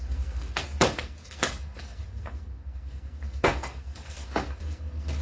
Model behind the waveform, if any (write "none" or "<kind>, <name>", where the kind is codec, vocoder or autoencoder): codec, SNAC